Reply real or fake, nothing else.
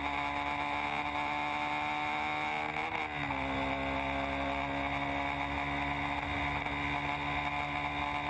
real